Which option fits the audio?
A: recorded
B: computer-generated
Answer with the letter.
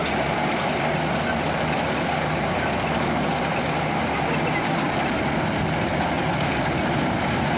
A